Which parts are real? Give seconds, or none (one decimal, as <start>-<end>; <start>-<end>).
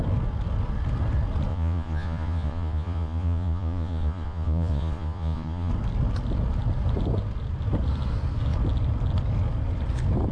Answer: 0.0-1.5; 5.7-10.3